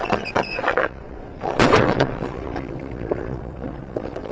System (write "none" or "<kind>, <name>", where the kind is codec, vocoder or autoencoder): vocoder, WaveNeXt